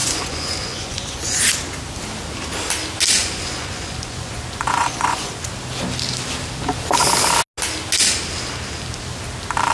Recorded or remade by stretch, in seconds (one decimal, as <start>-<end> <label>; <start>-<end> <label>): 0.0-1.4 remade; 1.4-3.2 recorded; 3.2-5.3 remade; 5.3-9.7 recorded